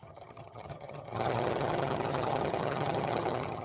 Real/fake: fake